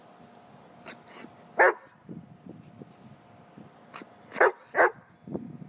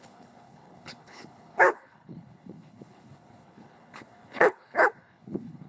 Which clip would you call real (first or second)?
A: first